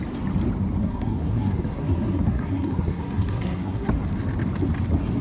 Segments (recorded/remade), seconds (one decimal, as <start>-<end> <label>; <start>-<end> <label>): 0.0-0.8 recorded; 0.8-3.9 remade; 3.9-5.2 recorded